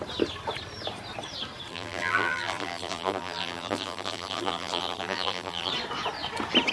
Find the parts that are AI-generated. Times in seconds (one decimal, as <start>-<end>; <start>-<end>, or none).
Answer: 1.7-5.7